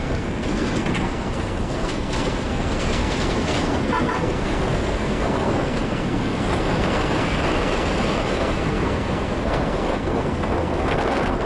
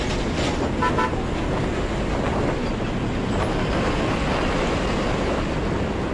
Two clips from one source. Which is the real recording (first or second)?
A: second